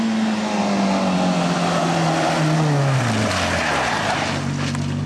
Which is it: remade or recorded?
recorded